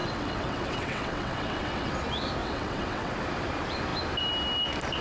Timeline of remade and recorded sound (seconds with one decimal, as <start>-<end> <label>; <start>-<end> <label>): 0.0-1.9 remade; 1.9-2.4 recorded; 2.4-3.1 remade; 3.1-5.0 recorded